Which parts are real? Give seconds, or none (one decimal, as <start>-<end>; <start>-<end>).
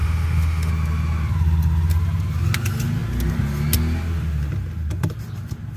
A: 0.7-5.8